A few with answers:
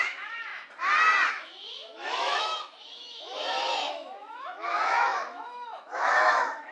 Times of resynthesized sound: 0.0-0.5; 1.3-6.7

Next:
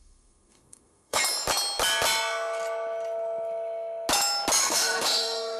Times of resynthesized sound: 0.0-1.2; 4.6-5.6

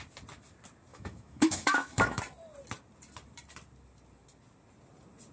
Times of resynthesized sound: 0.9-2.2

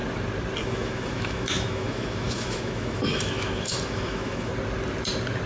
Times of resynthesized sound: 0.6-4.5

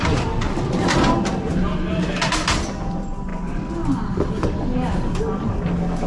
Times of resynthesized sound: none

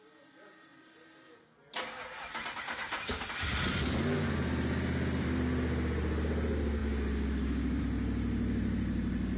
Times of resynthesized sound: none

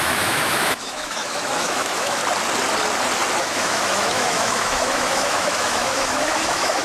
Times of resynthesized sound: 0.0-2.2; 3.4-6.8